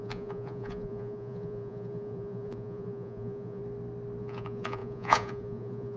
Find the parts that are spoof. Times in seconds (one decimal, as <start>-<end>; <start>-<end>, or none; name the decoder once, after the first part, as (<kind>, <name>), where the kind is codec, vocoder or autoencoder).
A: 0.0-3.6 (vocoder, Vocos); 4.2-6.0